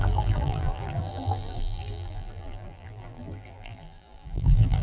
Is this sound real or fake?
fake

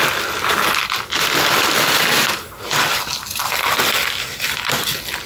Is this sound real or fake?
real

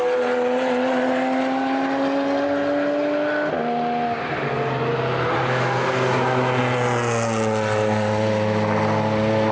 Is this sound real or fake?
real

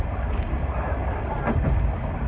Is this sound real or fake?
real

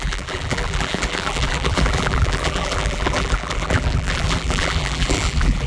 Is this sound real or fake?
fake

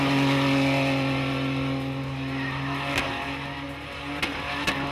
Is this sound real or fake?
real